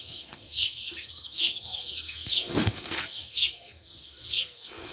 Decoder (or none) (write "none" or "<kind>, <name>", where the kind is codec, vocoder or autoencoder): codec, SNAC